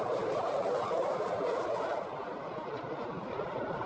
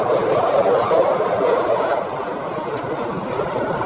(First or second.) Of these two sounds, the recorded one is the second